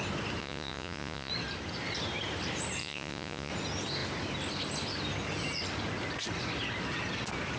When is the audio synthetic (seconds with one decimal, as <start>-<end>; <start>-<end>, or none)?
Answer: 0.4-1.3; 2.8-3.5